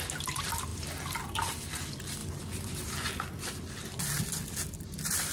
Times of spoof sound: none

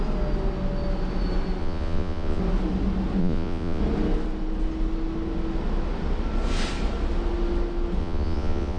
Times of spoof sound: 1.6-2.4 (vocoder, Vocos); 3.2-3.8; 8.0-8.8

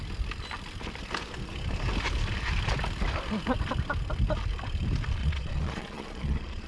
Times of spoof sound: 5.2-6.7 (vocoder, Vocos)

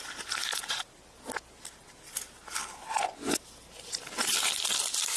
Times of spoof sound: none